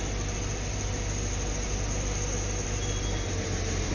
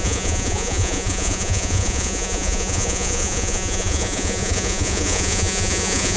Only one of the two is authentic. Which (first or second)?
first